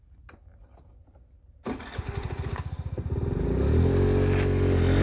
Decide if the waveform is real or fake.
real